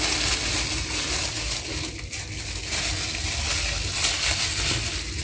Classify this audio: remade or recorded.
recorded